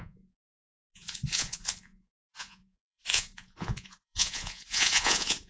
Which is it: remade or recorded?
remade